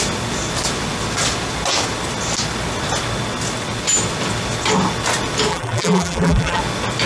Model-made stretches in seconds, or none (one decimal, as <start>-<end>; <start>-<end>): 5.5-6.6